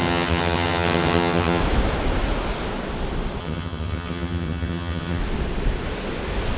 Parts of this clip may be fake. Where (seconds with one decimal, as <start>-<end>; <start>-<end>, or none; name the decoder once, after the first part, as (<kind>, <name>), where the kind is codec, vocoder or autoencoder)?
0.0-1.6 (vocoder, HiFi-GAN); 3.4-5.2